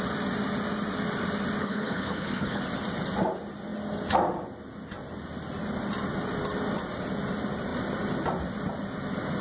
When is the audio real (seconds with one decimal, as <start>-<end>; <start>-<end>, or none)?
0.0-1.6; 2.6-9.4